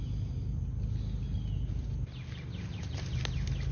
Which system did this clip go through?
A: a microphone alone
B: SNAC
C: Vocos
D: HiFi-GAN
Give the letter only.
A